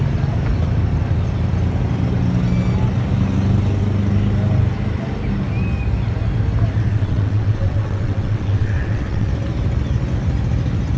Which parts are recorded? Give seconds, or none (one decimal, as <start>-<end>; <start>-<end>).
0.0-6.9; 9.3-11.0